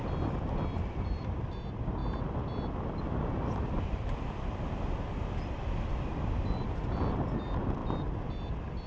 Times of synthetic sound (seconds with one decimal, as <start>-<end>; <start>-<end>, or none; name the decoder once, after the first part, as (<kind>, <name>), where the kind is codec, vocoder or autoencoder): none